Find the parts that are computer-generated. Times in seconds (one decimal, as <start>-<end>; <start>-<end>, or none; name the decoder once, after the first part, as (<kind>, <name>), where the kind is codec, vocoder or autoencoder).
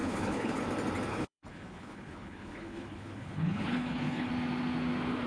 0.0-0.6 (codec, HILCodec); 1.1-4.3